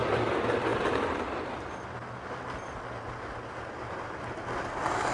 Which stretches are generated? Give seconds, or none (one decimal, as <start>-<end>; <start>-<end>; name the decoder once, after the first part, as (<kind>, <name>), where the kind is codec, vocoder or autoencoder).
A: none